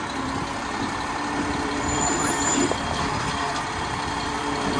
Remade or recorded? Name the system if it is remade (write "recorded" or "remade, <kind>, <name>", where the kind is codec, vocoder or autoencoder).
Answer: remade, vocoder, BigVGAN v2